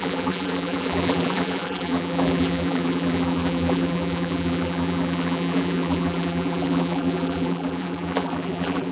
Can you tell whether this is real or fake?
fake